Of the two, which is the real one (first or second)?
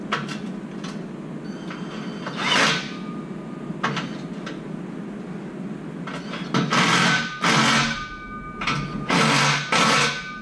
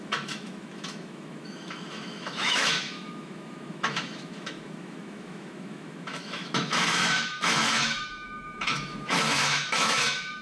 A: first